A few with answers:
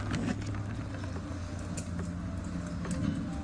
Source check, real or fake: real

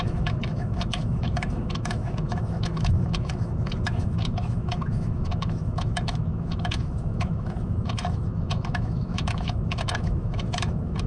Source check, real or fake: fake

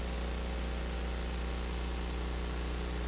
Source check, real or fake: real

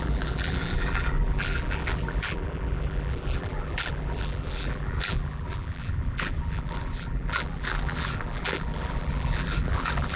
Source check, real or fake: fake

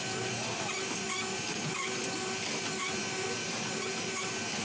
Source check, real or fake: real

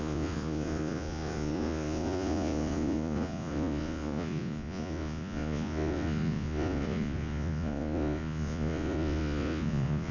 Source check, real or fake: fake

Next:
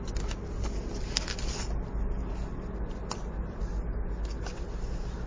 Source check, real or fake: real